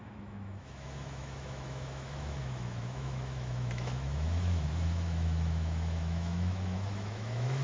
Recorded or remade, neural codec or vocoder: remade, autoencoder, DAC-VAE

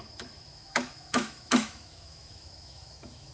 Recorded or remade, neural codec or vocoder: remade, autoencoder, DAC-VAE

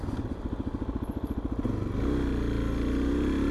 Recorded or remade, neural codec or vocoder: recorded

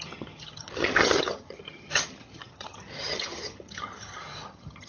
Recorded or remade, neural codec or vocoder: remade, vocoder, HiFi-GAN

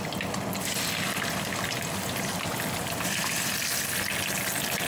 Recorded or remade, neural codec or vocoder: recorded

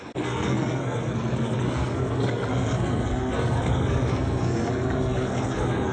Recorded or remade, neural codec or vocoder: remade, codec, SNAC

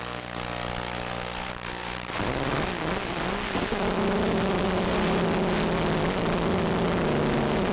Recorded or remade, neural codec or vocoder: recorded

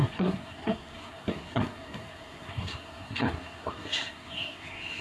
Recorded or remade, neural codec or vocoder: remade, codec, SNAC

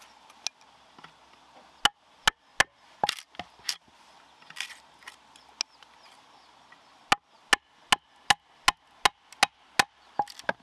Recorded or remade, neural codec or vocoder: recorded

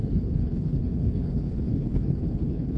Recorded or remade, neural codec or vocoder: remade, codec, HILCodec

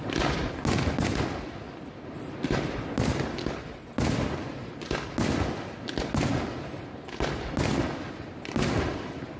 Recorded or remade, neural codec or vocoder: recorded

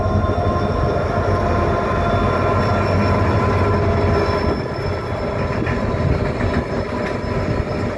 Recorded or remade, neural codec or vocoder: recorded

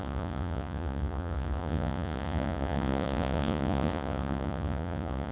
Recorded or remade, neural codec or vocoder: remade, vocoder, Vocos